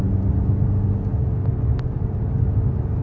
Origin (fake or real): real